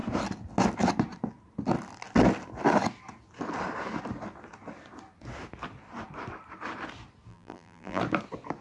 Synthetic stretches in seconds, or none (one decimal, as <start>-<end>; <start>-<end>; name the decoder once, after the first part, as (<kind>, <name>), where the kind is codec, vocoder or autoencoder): 7.3-8.0 (vocoder, BigVGAN v2)